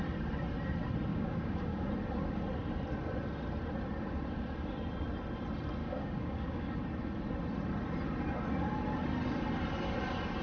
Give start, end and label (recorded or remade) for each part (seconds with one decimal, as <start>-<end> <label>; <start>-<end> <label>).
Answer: 0.0-1.1 recorded; 1.1-1.9 remade; 1.9-5.8 recorded; 5.8-6.7 remade; 6.7-10.4 recorded